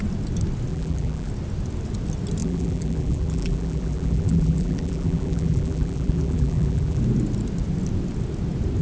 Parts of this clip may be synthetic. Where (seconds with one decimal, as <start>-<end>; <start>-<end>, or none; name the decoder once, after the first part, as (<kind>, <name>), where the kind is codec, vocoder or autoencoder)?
0.7-1.3 (vocoder, BigVGAN v2); 2.4-7.0